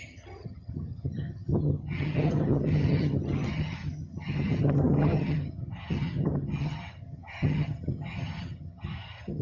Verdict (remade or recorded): remade